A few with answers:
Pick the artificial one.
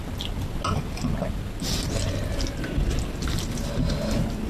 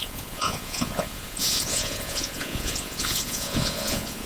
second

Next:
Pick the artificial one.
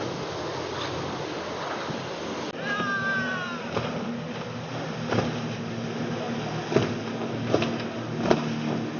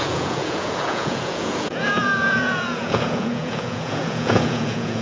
second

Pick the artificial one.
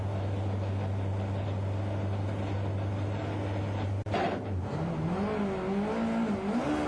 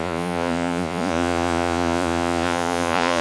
second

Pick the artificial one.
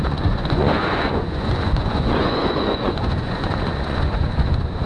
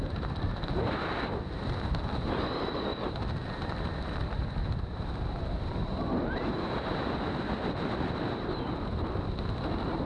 first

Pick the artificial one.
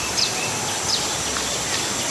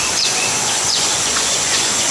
second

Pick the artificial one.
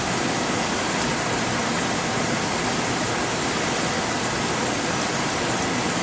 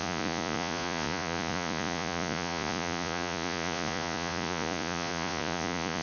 second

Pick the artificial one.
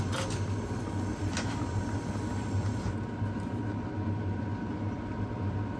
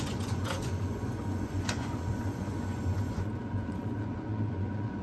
second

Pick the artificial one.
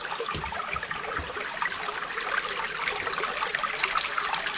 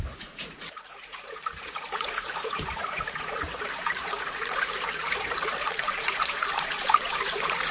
second